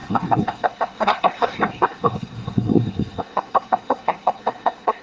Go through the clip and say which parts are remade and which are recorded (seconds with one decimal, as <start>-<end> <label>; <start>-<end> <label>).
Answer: 0.0-5.0 remade